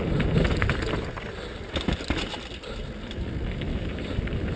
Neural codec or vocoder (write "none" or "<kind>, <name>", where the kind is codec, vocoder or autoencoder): none